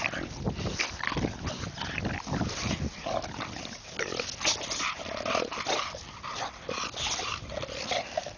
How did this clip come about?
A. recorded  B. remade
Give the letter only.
A